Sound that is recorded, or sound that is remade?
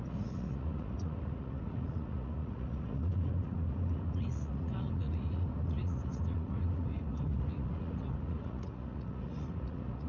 remade